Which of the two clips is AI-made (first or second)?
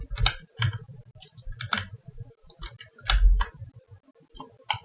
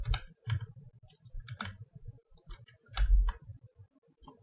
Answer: second